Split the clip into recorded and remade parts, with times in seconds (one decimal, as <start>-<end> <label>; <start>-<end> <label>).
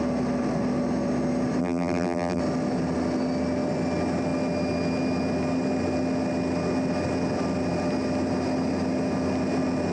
0.0-1.6 recorded; 1.6-2.4 remade; 2.4-9.9 recorded